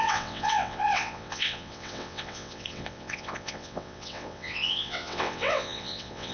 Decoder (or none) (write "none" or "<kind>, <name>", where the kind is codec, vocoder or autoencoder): vocoder, WaveNeXt